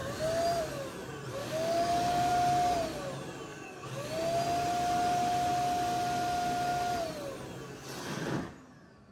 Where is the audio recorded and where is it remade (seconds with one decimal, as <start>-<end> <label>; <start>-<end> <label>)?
0.0-1.4 recorded; 1.4-2.3 remade; 2.3-3.5 recorded; 3.5-4.1 remade; 4.1-9.1 recorded